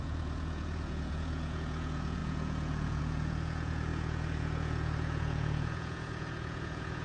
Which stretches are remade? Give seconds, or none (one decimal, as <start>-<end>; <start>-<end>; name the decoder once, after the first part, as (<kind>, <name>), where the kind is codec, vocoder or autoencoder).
0.0-7.0 (vocoder, Vocos)